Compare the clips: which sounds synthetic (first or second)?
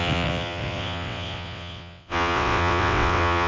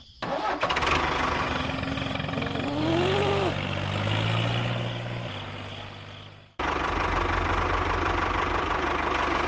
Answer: first